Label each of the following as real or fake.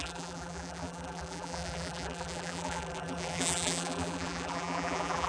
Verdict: fake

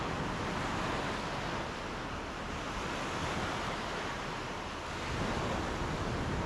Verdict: real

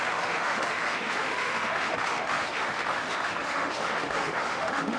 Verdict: fake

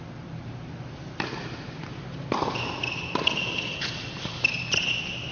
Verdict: real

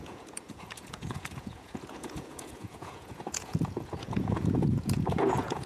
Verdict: fake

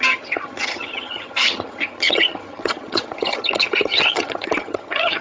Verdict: fake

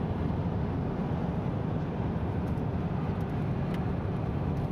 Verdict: real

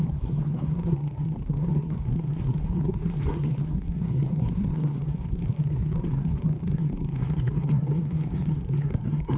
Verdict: fake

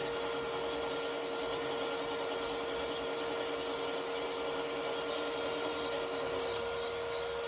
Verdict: real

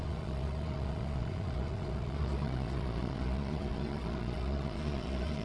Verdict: fake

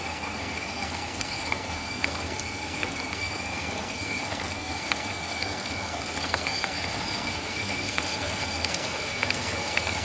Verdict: fake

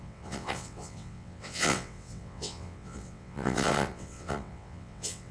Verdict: fake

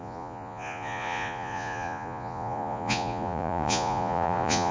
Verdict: fake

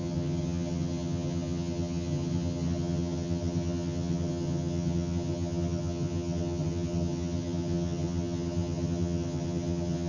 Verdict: fake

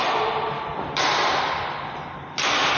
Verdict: real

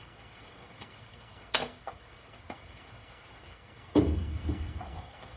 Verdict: fake